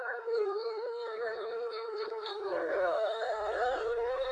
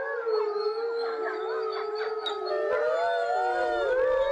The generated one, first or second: first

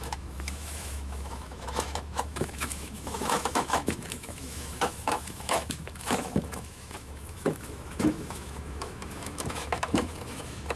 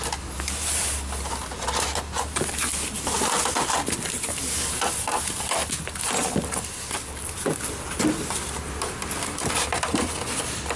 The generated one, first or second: first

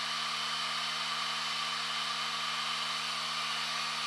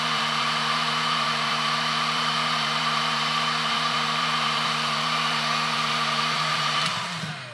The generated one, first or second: second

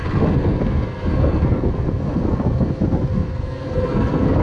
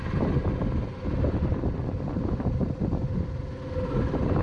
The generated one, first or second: first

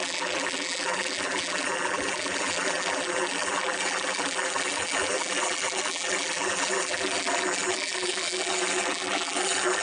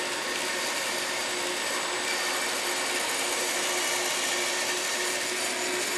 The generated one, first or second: first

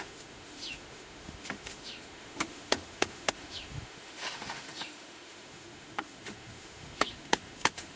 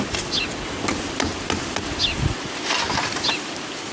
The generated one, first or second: first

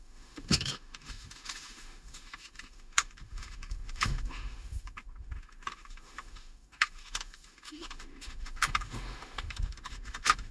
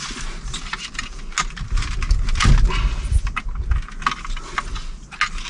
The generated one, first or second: first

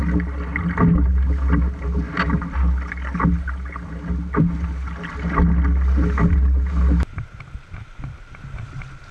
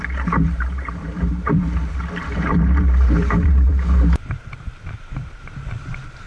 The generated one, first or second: second